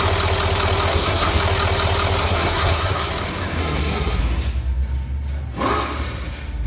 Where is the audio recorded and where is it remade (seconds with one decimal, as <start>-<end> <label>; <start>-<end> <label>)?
0.0-0.9 recorded; 0.9-1.4 remade; 1.4-2.2 recorded; 2.2-3.1 remade; 3.1-3.6 recorded; 3.6-4.2 remade; 4.2-6.7 recorded